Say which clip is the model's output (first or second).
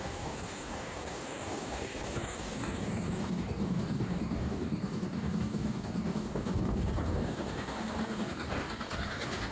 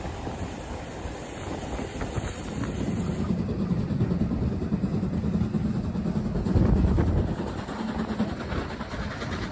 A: first